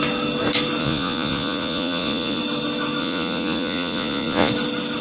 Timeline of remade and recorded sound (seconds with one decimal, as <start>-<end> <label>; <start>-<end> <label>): 0.0-0.8 recorded; 0.8-2.4 remade; 2.4-3.0 recorded; 3.0-4.5 remade; 4.5-5.0 recorded